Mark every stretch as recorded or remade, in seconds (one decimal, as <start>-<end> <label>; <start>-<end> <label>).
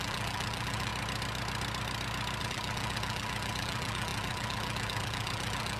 0.0-0.9 remade; 0.9-2.4 recorded; 2.4-5.8 remade